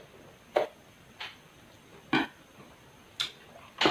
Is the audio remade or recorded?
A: recorded